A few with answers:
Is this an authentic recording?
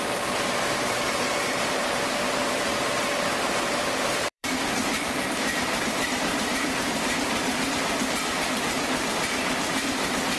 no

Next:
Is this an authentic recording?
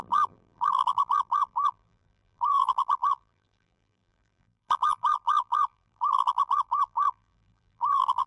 no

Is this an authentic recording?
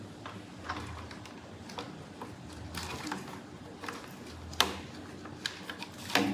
yes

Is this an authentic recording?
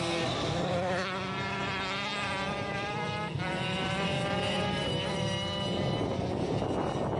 yes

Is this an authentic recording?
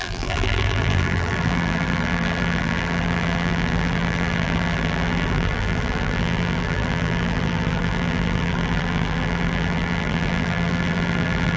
no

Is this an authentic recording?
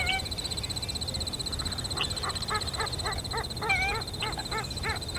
yes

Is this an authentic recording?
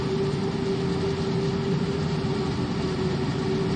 yes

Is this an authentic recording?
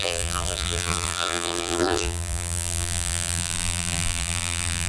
no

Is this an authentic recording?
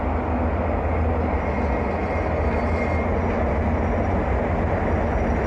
yes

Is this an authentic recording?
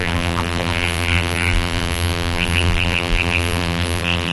no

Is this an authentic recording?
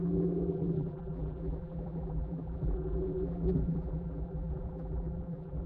no